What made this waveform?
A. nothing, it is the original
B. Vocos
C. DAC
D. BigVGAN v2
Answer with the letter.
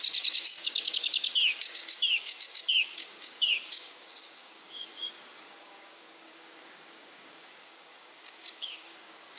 C